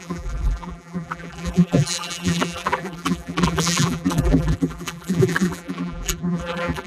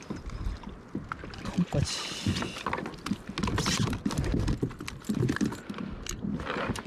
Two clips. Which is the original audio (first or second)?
second